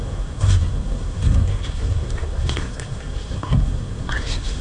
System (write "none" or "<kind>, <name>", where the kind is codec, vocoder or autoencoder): codec, SNAC